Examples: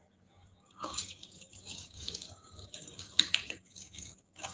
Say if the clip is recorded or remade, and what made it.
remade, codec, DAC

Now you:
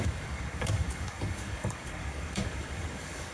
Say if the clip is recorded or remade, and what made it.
remade, codec, DAC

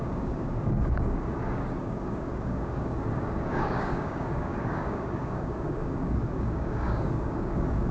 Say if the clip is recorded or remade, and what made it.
remade, codec, DAC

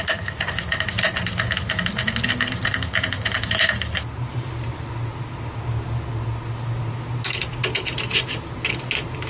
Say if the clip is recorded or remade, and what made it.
recorded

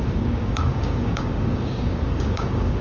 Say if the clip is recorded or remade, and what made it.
remade, codec, DAC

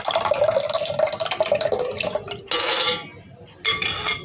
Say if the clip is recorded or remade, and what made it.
recorded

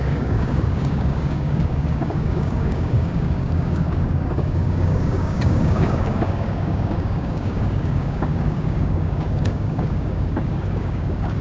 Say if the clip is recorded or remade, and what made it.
remade, codec, DAC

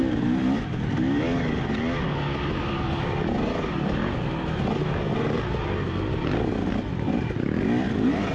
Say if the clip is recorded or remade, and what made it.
recorded